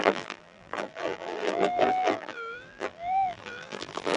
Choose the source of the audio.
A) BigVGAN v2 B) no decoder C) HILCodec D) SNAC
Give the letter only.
A